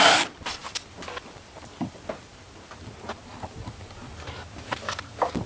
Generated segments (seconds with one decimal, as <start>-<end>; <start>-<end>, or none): 0.0-2.3; 3.3-5.5